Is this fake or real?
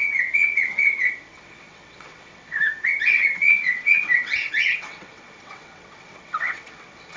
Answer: fake